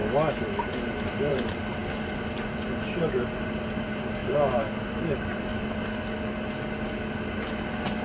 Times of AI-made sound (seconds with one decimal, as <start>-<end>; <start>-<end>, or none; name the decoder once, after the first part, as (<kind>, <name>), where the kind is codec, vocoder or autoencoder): 0.6-5.5 (vocoder, BigVGAN v2)